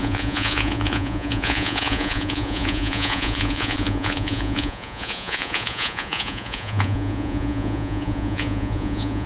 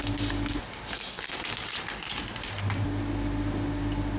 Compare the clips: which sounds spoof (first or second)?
first